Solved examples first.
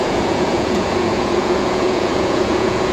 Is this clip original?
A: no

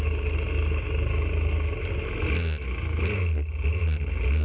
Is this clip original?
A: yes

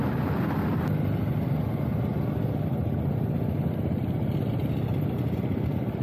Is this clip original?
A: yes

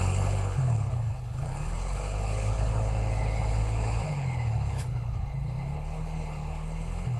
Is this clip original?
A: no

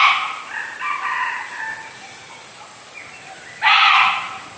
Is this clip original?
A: yes